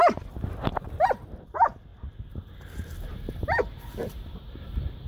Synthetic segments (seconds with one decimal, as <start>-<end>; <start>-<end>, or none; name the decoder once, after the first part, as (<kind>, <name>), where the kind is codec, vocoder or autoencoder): 1.9-2.5 (vocoder, BigVGAN v2); 3.4-5.1